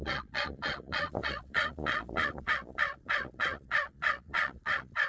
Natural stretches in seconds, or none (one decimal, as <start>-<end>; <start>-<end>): none

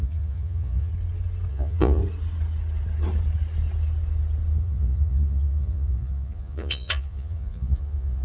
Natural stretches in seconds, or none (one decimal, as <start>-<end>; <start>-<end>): 0.9-1.5; 2.0-4.6

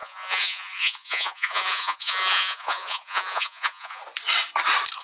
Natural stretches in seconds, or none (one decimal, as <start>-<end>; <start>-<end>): 4.0-5.0

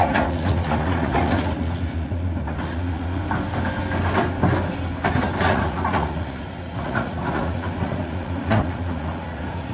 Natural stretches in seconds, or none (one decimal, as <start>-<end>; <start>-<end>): 3.2-5.4

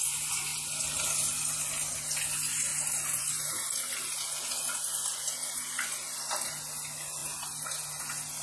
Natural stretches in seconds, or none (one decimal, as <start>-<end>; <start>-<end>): 0.0-8.4

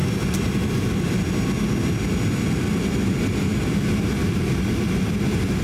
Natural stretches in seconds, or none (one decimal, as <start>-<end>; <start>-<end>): 0.0-5.6